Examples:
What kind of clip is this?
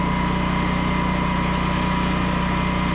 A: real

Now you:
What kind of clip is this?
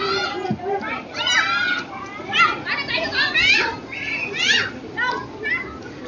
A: real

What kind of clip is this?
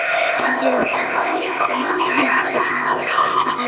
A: fake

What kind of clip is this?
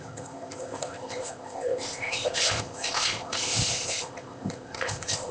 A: fake